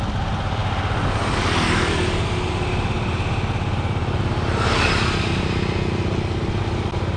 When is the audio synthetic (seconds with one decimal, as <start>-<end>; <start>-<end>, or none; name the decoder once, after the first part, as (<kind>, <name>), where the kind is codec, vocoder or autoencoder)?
none